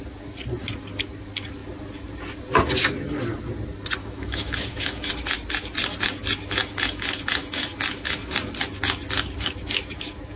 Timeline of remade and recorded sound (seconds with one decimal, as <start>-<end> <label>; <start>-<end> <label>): 0.0-4.0 recorded; 4.0-5.1 remade; 5.1-6.6 recorded; 6.6-8.3 remade; 8.3-10.4 recorded